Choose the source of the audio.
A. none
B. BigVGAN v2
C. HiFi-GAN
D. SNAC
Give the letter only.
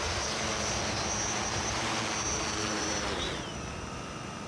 A